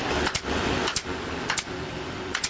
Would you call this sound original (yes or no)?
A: yes